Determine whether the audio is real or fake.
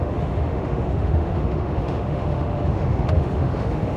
fake